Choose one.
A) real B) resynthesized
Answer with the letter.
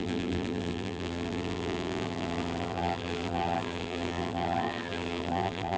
B